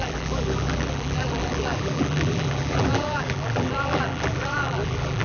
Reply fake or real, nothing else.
fake